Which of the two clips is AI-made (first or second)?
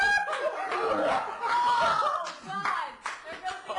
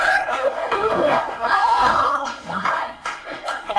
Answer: second